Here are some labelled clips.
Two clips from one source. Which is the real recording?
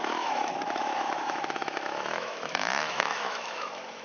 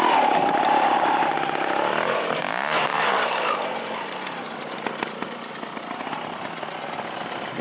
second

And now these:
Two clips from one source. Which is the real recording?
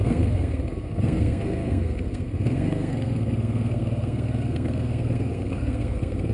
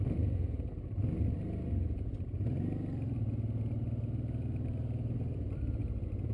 second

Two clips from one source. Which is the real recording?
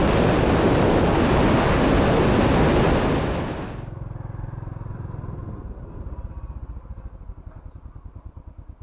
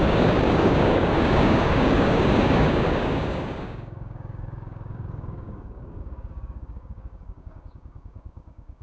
first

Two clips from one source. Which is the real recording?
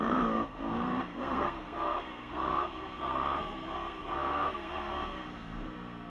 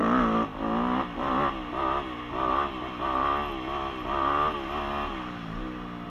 second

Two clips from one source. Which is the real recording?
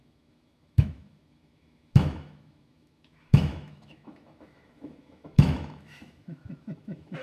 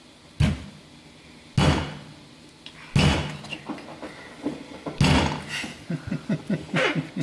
second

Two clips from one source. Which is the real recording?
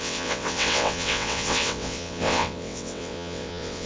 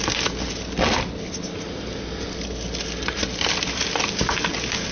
second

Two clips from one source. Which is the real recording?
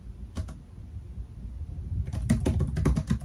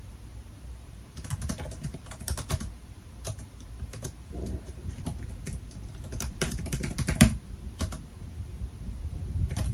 first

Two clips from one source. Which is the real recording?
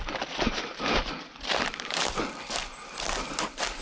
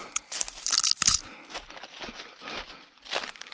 second